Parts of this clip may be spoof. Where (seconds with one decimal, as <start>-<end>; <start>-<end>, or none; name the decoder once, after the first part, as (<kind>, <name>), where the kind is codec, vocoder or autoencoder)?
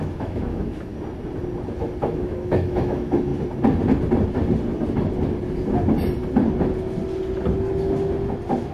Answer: 0.0-0.9 (autoencoder, DAC-VAE); 2.0-3.3